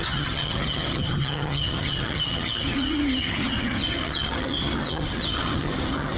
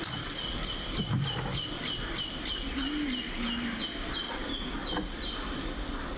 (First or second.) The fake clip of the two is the first